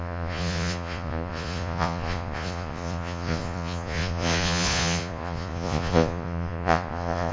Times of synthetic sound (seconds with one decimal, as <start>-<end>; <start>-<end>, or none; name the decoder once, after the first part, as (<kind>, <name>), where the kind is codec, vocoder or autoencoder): 0.0-7.3 (vocoder, Vocos)